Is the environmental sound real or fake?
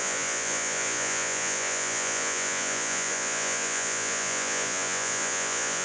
fake